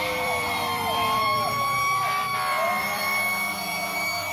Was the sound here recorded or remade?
remade